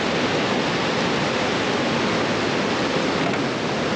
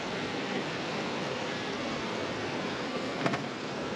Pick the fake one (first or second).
second